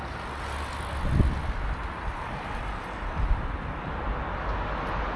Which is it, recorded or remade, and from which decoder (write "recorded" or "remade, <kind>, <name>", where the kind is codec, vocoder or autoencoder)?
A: recorded